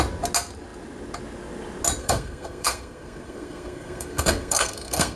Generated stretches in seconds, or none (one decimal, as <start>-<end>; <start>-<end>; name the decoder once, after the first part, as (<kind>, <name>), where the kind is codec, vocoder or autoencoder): 2.0-5.2 (codec, SNAC)